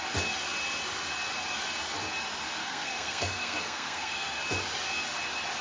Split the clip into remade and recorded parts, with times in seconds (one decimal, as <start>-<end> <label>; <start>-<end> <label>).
0.0-2.6 recorded; 2.6-4.4 remade; 4.4-5.6 recorded